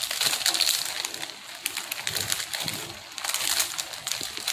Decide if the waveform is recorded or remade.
recorded